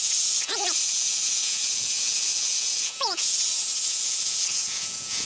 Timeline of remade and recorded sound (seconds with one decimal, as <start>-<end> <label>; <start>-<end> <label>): 0.0-5.2 remade